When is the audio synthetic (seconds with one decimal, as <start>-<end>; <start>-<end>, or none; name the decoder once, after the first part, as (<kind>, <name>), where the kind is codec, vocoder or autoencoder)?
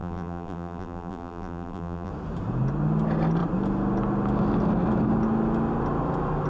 0.0-2.1 (vocoder, BigVGAN v2)